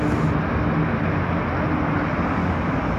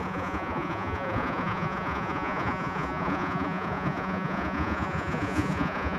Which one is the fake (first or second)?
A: second